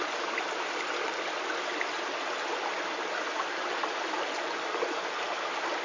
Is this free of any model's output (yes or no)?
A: yes